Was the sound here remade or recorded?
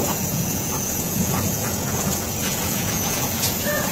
remade